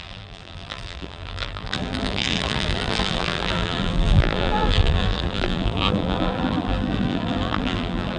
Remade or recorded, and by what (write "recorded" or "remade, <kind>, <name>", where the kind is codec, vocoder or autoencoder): remade, vocoder, BigVGAN v2